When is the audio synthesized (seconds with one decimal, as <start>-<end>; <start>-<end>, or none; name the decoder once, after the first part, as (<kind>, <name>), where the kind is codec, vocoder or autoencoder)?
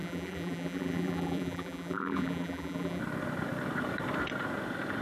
0.0-3.0 (vocoder, BigVGAN v2)